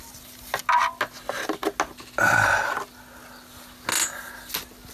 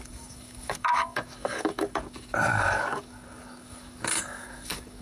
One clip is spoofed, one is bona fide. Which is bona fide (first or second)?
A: first